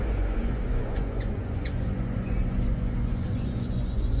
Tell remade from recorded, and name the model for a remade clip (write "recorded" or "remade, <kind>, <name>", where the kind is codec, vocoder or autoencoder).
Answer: remade, vocoder, Vocos